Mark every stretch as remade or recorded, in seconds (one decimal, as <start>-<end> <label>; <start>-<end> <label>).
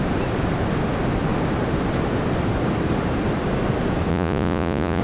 0.0-4.1 recorded; 4.1-5.0 remade